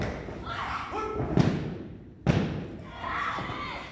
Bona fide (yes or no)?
yes